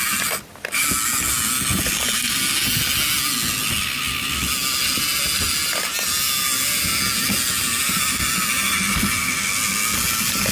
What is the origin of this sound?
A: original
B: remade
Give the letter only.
A